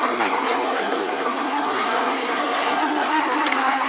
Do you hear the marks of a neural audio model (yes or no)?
yes